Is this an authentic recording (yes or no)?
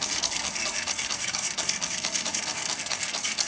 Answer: no